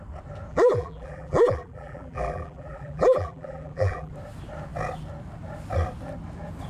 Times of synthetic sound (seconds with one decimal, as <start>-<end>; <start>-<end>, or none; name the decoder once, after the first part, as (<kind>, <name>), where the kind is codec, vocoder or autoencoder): 0.5-4.1 (vocoder, BigVGAN v2)